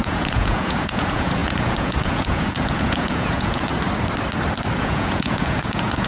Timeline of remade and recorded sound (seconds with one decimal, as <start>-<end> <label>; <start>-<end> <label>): 0.0-3.7 remade; 3.7-4.8 recorded; 4.8-6.1 remade